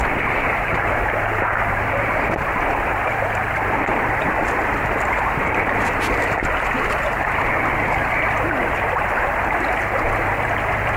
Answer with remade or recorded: remade